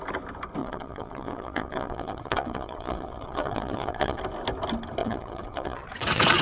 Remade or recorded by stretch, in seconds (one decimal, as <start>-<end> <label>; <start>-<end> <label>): 0.0-0.6 recorded; 0.6-4.2 remade; 4.2-5.0 recorded; 5.0-6.4 remade

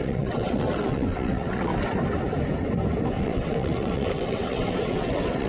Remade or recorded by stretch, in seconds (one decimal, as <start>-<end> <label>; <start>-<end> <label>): 0.0-1.7 remade; 1.7-3.2 recorded; 3.2-5.5 remade

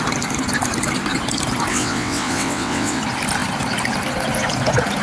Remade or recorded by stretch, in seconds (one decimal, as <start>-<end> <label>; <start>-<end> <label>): 0.0-1.7 recorded; 1.7-3.0 remade; 3.0-5.0 recorded

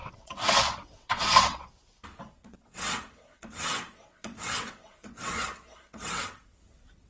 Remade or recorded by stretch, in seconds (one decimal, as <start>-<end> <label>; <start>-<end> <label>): 0.0-1.7 remade; 1.7-2.4 recorded; 2.4-7.1 remade

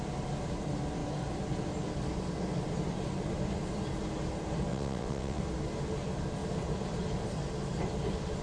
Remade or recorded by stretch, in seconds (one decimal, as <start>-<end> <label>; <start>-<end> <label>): 0.0-4.7 recorded; 4.7-5.4 remade; 5.4-8.4 recorded

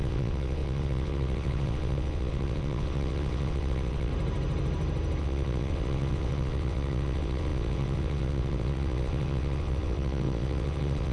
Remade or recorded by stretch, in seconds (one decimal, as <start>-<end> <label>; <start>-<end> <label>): 0.0-4.1 remade; 4.1-5.2 recorded; 5.2-11.1 remade

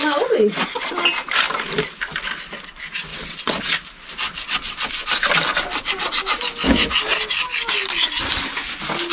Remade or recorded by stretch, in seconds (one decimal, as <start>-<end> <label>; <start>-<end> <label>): 0.0-0.6 remade; 0.6-3.1 recorded; 3.1-3.7 remade; 3.7-9.1 recorded